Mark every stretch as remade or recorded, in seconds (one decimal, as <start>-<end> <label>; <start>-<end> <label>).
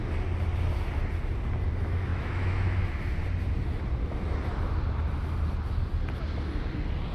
0.0-2.1 recorded; 2.1-3.0 remade; 3.0-7.1 recorded